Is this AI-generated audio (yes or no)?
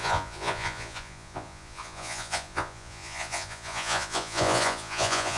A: yes